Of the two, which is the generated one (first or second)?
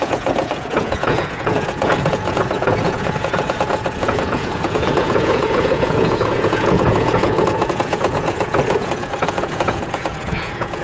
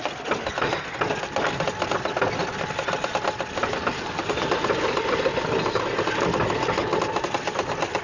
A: first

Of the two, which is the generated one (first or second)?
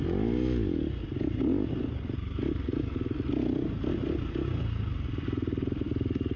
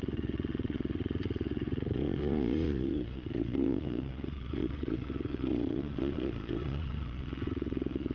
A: second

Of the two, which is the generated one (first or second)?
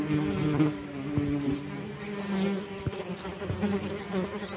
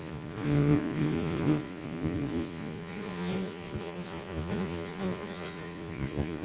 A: second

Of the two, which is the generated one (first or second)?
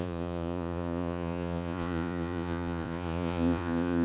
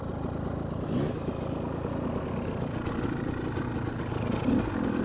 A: first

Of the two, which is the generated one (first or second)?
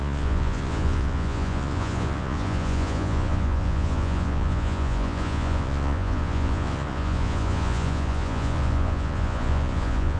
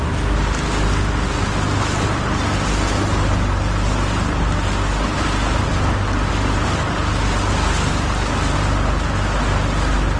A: first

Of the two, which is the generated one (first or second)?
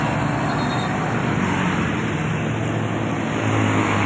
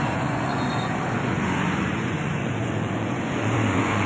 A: second